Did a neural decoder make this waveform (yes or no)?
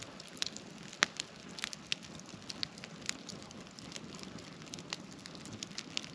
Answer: no